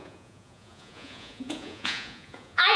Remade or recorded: remade